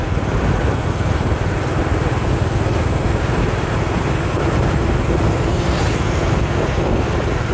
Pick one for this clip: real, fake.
real